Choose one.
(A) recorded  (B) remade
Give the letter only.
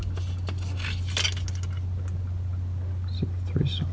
A